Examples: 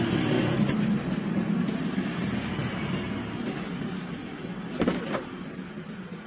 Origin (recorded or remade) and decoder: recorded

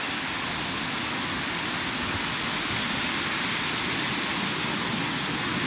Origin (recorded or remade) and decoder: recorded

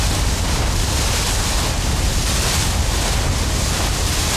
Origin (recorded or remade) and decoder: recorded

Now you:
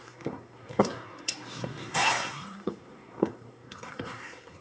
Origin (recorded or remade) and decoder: remade, codec, SNAC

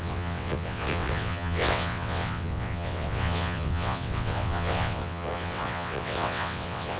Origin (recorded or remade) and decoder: remade, vocoder, WaveNeXt